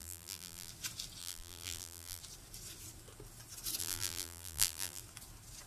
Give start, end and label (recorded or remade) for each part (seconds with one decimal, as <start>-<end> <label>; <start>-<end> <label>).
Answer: 0.0-0.7 remade; 0.7-1.2 recorded; 1.2-2.2 remade; 2.2-3.8 recorded; 3.8-5.0 remade; 5.0-5.7 recorded